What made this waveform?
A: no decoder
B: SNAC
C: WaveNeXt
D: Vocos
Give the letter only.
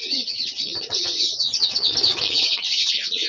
C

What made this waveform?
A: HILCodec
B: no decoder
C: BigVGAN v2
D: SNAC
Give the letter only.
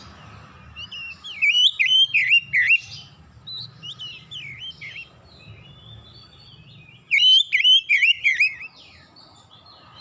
B